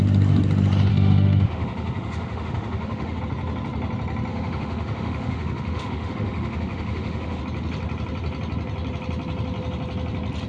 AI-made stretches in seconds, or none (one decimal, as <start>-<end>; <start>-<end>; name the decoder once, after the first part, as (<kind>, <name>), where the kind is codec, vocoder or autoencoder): 0.9-3.2 (autoencoder, DAC-VAE); 4.3-7.4

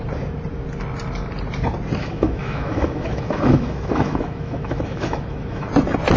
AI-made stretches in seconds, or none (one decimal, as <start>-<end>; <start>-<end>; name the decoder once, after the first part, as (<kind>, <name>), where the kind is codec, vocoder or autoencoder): 2.0-5.7 (autoencoder, DAC-VAE)

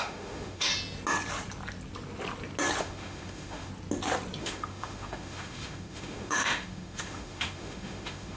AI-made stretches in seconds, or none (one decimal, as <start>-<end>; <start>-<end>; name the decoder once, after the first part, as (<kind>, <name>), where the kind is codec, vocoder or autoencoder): 0.0-0.7 (autoencoder, DAC-VAE); 2.8-3.7; 4.4-8.4

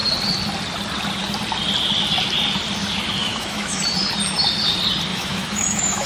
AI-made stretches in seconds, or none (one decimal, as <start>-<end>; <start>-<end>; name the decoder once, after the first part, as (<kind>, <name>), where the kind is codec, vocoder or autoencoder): 3.2-3.8 (autoencoder, DAC-VAE); 5.1-6.1

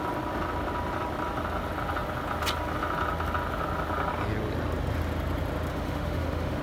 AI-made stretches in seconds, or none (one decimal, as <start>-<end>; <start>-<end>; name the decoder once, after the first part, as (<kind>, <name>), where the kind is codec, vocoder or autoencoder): 5.7-6.6 (autoencoder, DAC-VAE)

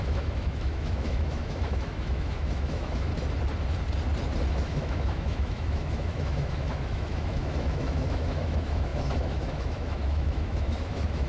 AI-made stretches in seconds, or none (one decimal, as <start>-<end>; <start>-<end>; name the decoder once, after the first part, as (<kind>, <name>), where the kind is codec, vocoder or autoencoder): 0.0-3.1 (autoencoder, DAC-VAE); 4.5-11.3

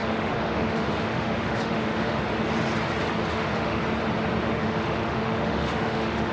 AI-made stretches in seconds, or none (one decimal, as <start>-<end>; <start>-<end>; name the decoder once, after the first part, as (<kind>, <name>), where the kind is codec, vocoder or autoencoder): 0.0-2.2 (autoencoder, DAC-VAE); 3.3-3.8; 4.5-6.3